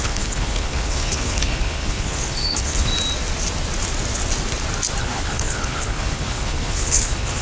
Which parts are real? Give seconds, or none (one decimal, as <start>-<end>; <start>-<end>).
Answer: 2.9-5.0